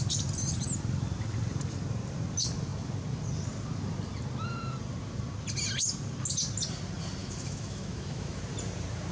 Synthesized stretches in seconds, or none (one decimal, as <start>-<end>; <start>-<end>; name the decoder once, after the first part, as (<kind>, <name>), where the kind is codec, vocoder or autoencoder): 7.2-8.4 (autoencoder, DAC-VAE)